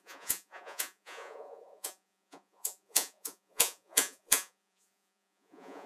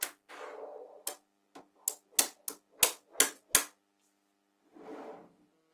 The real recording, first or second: second